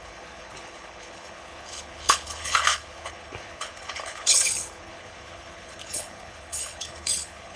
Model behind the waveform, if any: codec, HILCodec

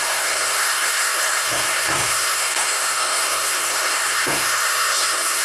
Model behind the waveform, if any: codec, SNAC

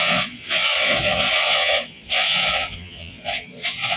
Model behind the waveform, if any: vocoder, Vocos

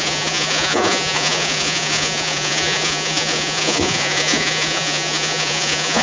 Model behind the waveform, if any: vocoder, Vocos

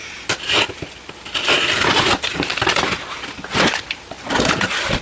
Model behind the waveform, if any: none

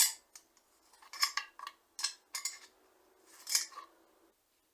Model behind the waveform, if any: none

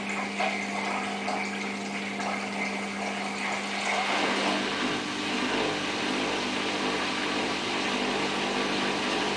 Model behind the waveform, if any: none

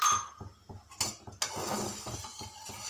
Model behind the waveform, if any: none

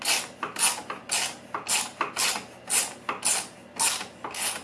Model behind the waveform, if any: none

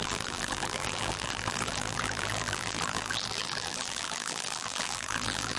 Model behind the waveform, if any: vocoder, BigVGAN v2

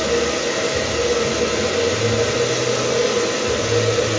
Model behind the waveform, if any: none